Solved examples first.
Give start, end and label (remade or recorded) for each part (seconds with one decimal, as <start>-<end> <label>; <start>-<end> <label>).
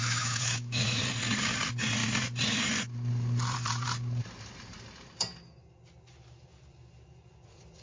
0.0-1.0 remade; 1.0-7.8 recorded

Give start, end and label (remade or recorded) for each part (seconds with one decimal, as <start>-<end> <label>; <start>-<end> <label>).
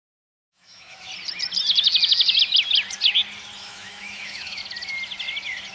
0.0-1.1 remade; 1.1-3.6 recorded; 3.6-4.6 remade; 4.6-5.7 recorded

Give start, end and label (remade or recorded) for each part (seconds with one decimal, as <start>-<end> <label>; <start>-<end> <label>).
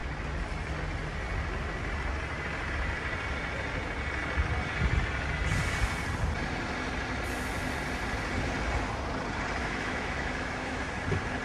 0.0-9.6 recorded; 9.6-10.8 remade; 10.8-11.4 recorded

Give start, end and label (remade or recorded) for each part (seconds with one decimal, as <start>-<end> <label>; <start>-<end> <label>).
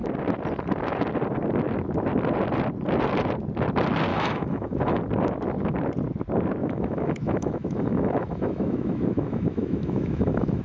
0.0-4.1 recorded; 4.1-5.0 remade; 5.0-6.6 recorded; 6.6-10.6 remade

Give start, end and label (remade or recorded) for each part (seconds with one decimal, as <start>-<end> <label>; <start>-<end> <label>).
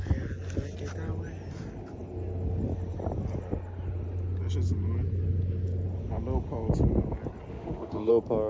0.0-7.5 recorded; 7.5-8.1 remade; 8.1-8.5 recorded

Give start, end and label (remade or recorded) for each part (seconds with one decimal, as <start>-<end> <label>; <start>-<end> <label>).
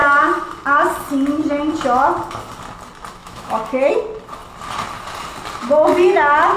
0.0-3.2 recorded; 3.2-3.9 remade; 3.9-6.6 recorded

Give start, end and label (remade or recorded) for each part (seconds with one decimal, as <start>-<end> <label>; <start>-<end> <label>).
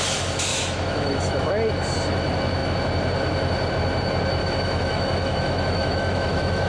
0.0-0.5 recorded; 0.5-1.5 remade; 1.5-4.4 recorded; 4.4-6.7 remade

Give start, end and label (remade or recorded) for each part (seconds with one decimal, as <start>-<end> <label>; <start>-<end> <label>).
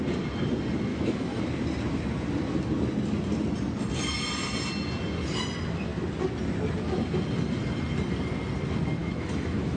0.0-0.9 recorded; 0.9-1.4 remade; 1.4-9.0 recorded; 9.0-9.8 remade